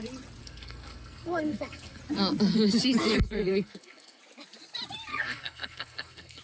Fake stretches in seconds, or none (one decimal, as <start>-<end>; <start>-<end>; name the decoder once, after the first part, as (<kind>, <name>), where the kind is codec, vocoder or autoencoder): 0.4-2.0 (codec, SNAC); 3.1-4.2; 5.1-6.4